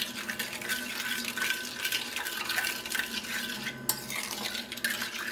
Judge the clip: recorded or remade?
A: recorded